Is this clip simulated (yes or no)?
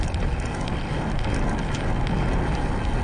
no